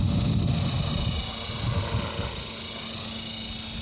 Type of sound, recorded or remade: recorded